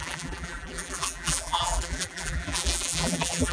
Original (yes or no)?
no